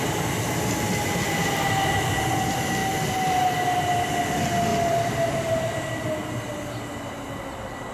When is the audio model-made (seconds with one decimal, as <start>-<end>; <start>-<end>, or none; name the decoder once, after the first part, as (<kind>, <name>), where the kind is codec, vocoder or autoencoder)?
4.7-5.3 (vocoder, BigVGAN v2)